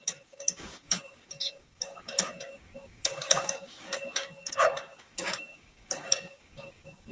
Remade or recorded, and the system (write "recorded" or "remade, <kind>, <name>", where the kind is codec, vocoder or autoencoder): remade, codec, DAC